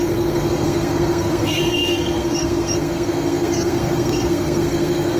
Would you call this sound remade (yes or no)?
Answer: yes